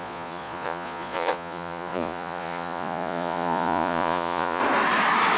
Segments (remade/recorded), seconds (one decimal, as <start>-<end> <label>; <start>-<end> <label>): 0.0-4.6 remade; 4.6-5.4 recorded